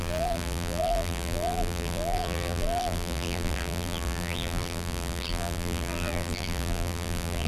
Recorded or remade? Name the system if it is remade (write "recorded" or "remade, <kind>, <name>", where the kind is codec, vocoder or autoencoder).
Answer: remade, vocoder, BigVGAN v2